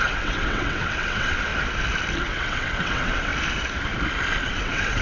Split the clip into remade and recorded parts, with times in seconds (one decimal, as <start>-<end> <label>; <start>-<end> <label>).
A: 0.0-1.5 remade; 1.5-2.2 recorded; 2.2-3.3 remade; 3.3-4.4 recorded; 4.4-5.0 remade